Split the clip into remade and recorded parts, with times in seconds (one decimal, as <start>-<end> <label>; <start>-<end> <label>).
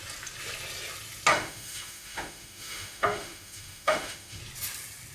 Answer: 0.0-1.3 recorded; 1.3-4.4 remade; 4.4-5.1 recorded